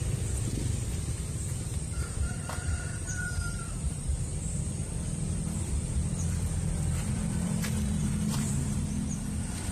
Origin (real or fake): fake